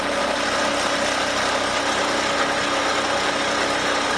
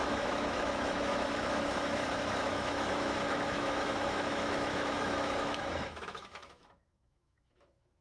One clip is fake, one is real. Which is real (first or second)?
first